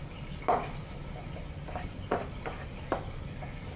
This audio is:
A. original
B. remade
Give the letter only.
A